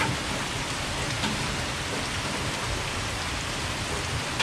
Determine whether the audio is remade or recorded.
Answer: recorded